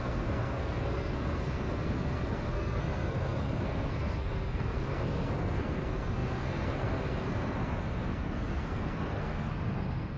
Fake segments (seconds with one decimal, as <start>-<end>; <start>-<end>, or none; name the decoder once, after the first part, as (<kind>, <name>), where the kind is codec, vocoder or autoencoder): 0.0-10.2 (codec, SNAC)